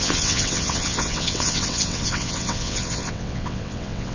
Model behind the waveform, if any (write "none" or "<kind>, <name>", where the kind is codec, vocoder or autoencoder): vocoder, WaveNeXt